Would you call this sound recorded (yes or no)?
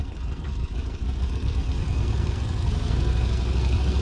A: no